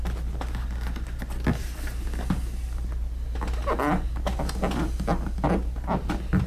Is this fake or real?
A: real